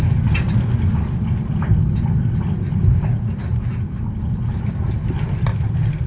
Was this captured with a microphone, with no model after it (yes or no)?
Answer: yes